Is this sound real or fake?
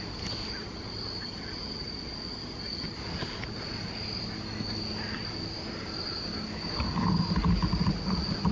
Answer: real